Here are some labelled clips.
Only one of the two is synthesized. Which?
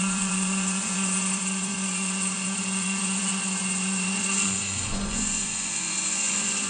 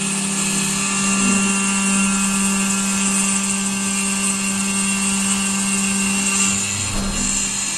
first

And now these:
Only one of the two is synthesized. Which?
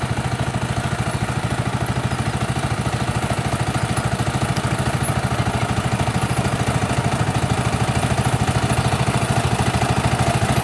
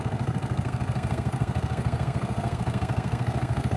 second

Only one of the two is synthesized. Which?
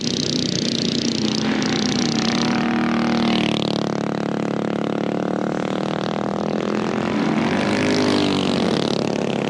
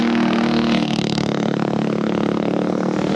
second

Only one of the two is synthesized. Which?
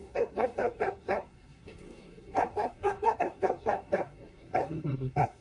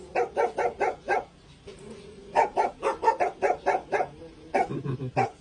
first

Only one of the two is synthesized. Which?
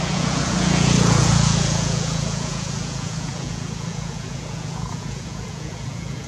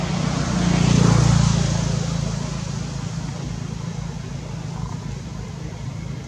first